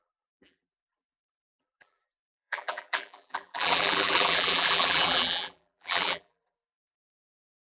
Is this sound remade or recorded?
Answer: remade